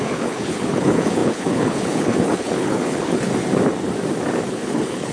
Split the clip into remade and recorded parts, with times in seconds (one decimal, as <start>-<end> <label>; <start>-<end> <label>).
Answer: 0.0-3.3 remade; 3.3-4.5 recorded; 4.5-5.1 remade